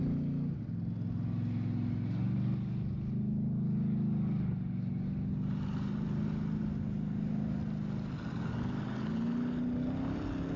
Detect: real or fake real